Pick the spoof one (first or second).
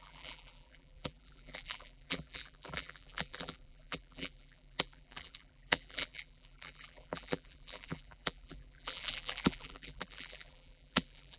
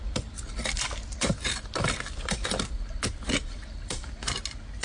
first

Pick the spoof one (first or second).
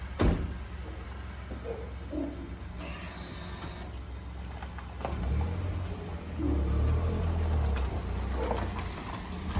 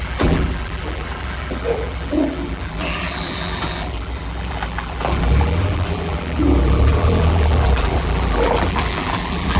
second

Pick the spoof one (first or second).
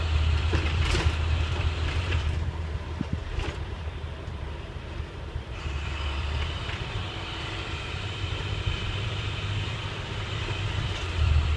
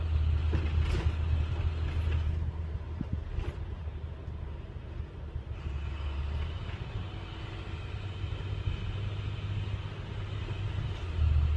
first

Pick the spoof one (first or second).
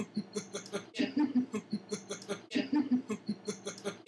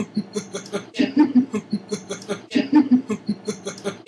second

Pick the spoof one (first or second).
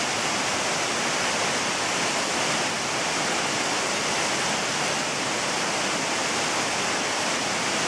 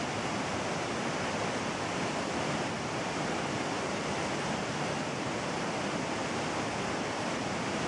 second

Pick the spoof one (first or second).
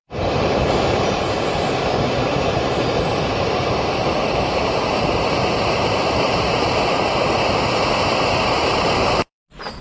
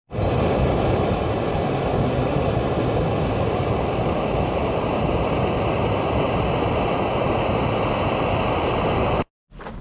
first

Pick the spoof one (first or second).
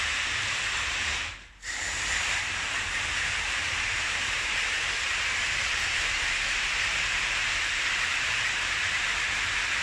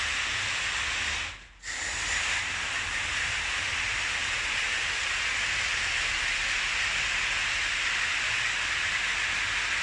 first